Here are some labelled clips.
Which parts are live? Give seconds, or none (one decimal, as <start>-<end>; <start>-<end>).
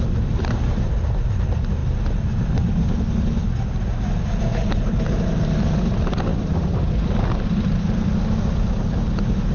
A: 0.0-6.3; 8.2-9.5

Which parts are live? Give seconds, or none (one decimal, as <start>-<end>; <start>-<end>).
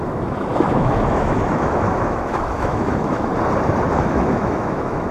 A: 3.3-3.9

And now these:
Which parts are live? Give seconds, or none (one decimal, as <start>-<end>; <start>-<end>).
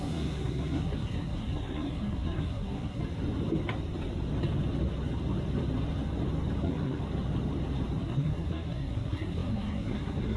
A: 3.0-6.6; 7.0-8.0